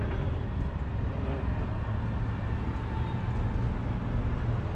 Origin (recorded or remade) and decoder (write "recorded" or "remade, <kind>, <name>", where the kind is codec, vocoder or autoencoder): recorded